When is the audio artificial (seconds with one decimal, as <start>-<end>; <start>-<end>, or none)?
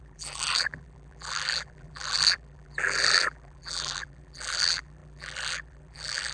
0.0-6.3